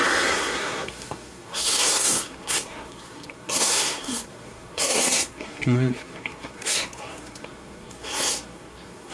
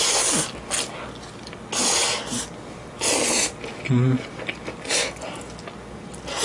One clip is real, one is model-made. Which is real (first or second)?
second